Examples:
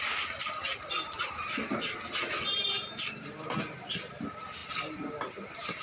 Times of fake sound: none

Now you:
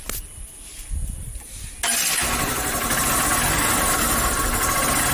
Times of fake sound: none